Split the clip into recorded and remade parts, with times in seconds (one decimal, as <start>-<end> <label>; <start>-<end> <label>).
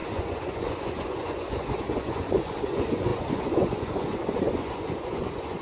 0.0-5.6 remade